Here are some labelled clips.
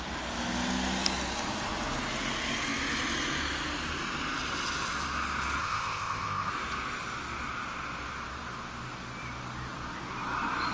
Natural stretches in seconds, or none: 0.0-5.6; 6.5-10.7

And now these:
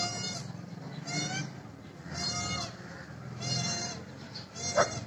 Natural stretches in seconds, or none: 0.0-5.1

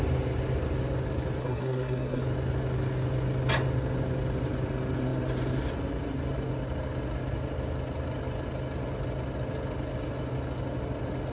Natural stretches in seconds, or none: 0.0-1.4; 2.2-11.3

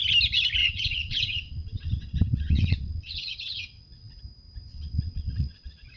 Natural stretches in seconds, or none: 0.0-0.6; 4.2-4.7

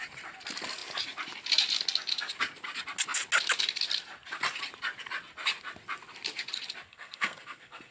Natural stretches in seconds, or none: 0.0-6.9